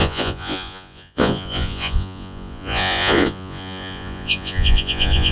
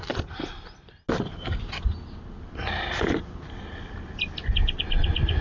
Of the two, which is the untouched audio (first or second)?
second